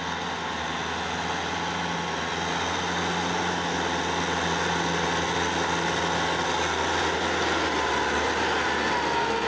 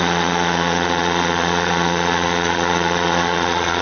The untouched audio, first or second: first